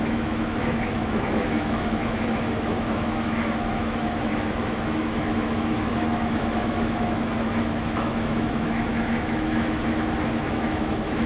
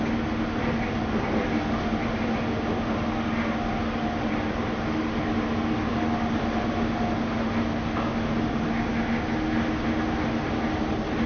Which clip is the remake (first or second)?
first